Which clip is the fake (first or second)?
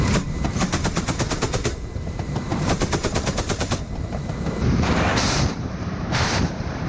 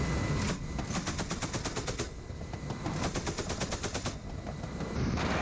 first